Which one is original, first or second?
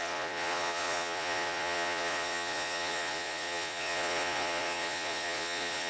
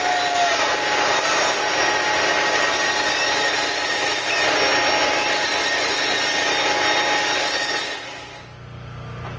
second